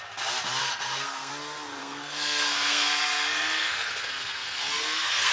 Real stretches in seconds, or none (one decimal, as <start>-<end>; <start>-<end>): 0.0-0.6; 1.3-1.8